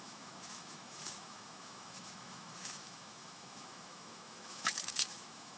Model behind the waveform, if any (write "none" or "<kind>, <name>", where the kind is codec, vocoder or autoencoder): autoencoder, DAC-VAE